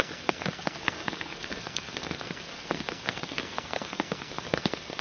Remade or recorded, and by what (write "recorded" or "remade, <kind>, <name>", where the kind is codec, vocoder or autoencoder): remade, codec, SNAC